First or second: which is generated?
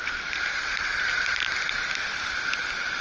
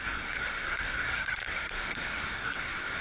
second